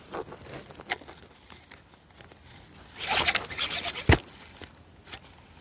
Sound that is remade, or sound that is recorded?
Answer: recorded